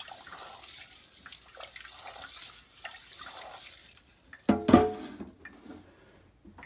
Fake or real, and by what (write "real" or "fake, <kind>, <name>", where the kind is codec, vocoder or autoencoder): real